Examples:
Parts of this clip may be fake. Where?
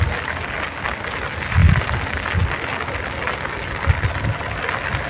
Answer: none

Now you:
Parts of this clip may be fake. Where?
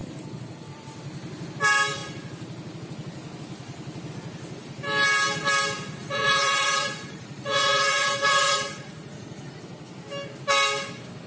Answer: 6.0-9.6 (vocoder, Vocos)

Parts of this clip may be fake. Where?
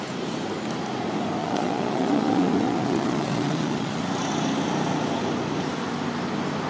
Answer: 1.4-4.0 (vocoder, Vocos)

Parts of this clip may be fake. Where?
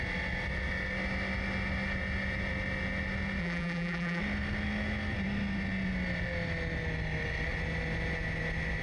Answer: 3.4-4.2 (vocoder, BigVGAN v2)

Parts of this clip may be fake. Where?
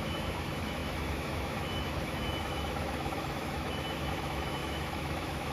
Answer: 0.0-5.5 (autoencoder, DAC-VAE)